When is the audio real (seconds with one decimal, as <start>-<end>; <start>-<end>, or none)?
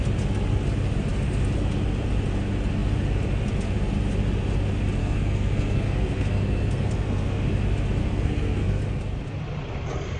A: 0.0-5.0; 7.5-8.0; 8.8-10.2